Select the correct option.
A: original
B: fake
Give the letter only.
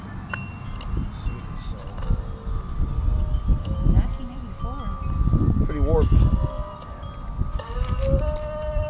A